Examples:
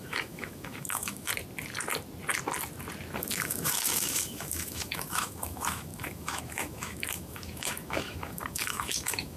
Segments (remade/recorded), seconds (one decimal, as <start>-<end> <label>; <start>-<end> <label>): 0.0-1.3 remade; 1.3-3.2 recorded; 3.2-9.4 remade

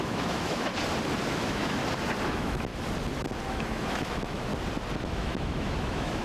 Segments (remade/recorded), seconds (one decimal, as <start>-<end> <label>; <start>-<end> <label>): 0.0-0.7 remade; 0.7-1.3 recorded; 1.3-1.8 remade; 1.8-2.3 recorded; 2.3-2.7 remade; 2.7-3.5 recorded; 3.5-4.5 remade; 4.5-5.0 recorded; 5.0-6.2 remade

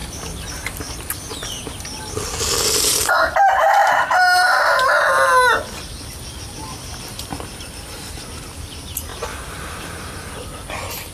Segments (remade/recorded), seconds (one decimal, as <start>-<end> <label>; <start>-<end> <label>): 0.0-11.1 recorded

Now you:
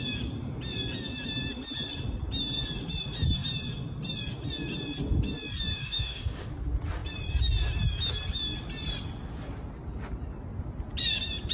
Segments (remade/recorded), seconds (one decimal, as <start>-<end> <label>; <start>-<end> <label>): 0.0-5.7 recorded; 5.7-6.5 remade; 6.5-11.5 recorded

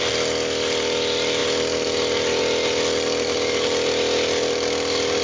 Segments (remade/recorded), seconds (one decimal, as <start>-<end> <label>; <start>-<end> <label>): 0.0-5.2 recorded

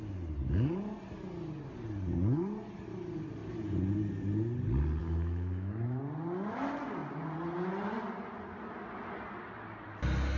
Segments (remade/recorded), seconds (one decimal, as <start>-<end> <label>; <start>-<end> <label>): 0.0-5.0 recorded; 5.0-6.0 remade; 6.0-10.4 recorded

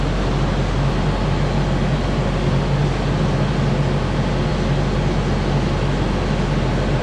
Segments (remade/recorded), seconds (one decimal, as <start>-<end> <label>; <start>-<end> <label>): 0.0-7.0 recorded